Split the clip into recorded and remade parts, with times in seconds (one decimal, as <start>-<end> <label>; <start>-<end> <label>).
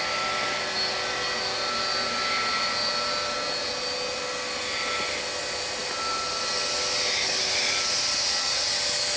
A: 0.0-9.2 recorded